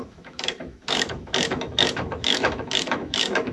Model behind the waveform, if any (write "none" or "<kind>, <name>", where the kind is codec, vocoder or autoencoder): autoencoder, DAC-VAE